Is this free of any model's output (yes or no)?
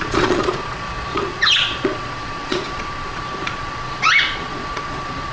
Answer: no